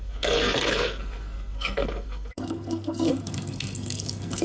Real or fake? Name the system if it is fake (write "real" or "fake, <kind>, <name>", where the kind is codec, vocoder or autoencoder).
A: fake, codec, SNAC